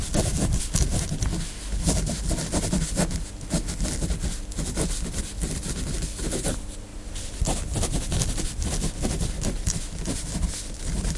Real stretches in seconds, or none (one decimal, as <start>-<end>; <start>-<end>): 0.0-11.2